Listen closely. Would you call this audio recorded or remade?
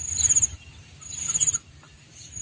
recorded